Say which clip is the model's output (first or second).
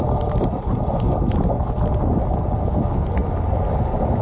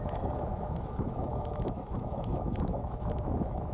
second